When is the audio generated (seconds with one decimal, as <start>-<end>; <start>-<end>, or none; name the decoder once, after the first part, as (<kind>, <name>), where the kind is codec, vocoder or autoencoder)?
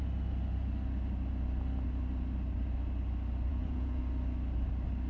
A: 3.5-4.0 (vocoder, Vocos)